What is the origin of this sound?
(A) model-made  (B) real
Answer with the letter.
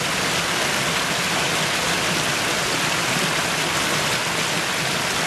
B